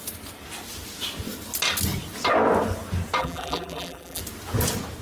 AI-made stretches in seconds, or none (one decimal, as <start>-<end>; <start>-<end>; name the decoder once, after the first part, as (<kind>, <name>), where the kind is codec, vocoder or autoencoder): 3.2-4.2 (vocoder, BigVGAN v2)